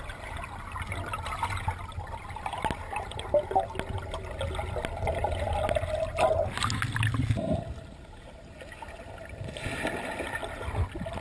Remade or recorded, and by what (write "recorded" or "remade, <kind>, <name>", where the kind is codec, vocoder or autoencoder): recorded